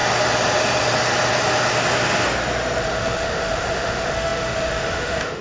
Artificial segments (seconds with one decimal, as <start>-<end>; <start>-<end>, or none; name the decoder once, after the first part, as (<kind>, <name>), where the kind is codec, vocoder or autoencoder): 2.8-5.4 (autoencoder, DAC-VAE)